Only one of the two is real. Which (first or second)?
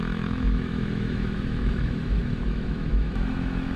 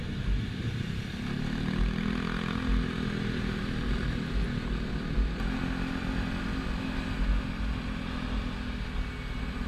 second